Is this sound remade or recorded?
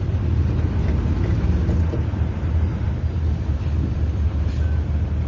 recorded